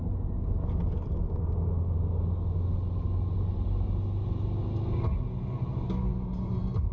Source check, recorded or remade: recorded